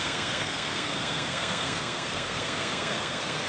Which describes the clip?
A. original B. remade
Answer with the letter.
B